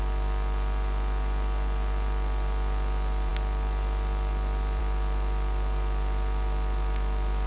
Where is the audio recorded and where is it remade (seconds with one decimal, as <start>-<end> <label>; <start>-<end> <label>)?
0.0-7.5 recorded